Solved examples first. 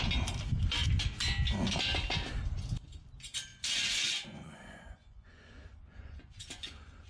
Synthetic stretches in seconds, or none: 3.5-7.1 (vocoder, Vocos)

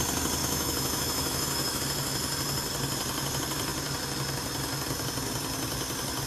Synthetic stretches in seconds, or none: 0.4-1.8 (autoencoder, DAC-VAE)

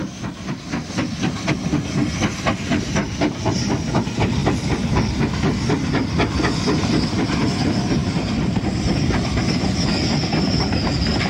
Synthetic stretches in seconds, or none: 8.0-8.6 (vocoder, BigVGAN v2)

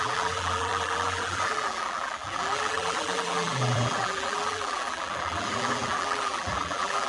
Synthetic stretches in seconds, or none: 0.0-7.1 (vocoder, BigVGAN v2)

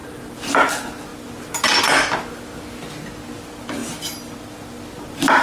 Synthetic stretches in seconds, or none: none

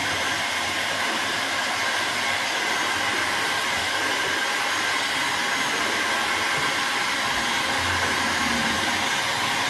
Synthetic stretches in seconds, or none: 0.0-1.7 (vocoder, BigVGAN v2)

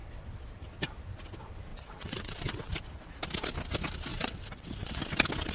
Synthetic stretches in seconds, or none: 0.0-0.5 (vocoder, WaveNeXt); 1.7-2.7; 4.1-5.0